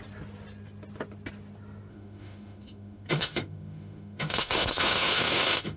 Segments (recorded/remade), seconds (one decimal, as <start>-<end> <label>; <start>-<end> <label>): 0.0-1.9 recorded; 1.9-5.8 remade